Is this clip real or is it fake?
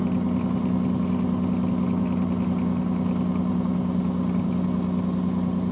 real